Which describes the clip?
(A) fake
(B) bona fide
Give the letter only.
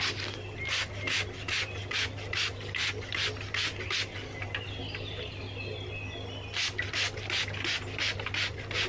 B